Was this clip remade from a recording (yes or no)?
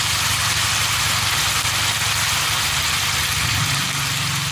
no